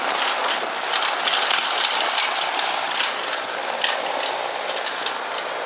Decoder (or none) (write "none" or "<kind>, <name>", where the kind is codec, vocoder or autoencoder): none